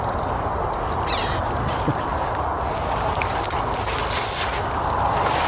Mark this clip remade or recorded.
recorded